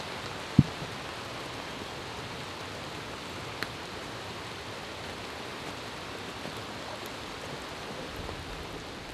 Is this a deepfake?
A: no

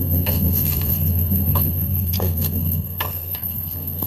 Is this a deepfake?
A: yes